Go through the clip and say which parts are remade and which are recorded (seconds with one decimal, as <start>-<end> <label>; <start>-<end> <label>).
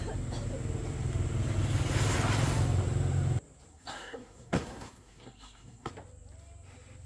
0.0-3.7 recorded; 3.7-5.9 remade; 5.9-7.1 recorded